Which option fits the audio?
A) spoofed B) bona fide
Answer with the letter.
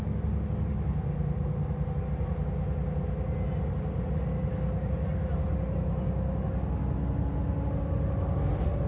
B